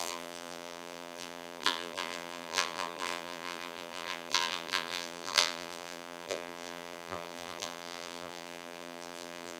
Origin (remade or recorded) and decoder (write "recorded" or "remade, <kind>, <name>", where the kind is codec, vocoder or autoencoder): remade, vocoder, BigVGAN v2